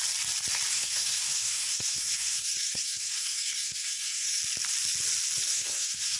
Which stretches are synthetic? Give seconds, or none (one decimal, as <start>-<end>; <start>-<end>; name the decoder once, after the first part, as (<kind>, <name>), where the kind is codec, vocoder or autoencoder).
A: 0.7-4.4 (codec, SNAC); 5.5-6.2